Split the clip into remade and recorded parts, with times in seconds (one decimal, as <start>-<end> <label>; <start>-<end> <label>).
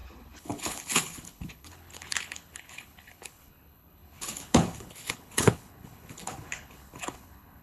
0.0-7.6 remade